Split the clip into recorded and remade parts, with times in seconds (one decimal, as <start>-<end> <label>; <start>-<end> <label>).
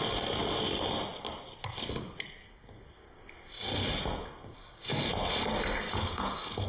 0.0-6.7 recorded